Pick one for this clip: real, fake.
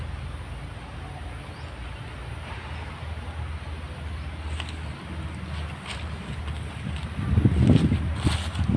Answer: real